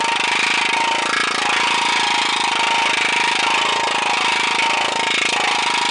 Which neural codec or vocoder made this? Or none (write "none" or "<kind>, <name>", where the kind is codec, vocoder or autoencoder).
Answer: none